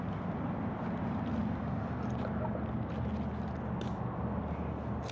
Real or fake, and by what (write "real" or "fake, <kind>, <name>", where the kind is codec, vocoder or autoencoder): real